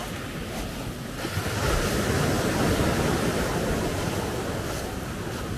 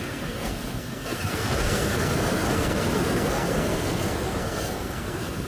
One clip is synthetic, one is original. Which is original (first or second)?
first